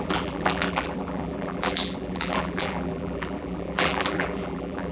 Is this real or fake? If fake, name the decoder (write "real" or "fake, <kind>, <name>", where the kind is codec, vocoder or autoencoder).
fake, vocoder, BigVGAN v2